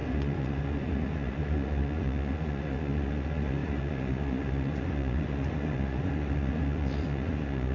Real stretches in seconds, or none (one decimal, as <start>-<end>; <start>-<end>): none